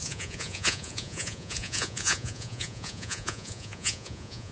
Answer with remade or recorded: remade